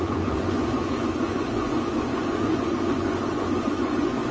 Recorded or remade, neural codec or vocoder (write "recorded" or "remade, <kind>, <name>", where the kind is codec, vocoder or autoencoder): remade, vocoder, Vocos